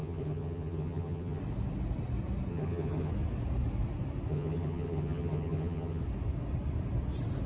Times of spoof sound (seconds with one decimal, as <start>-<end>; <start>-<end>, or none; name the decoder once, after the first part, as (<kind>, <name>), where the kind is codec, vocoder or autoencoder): 0.0-1.4 (vocoder, HiFi-GAN); 2.5-3.1; 4.3-6.0